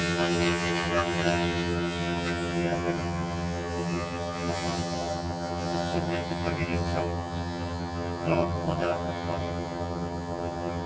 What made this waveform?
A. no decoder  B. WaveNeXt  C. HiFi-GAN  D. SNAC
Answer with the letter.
C